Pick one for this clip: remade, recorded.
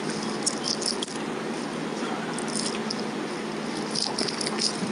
recorded